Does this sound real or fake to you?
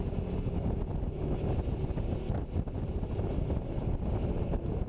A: real